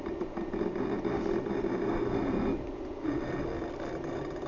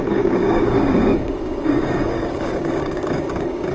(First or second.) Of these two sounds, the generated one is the second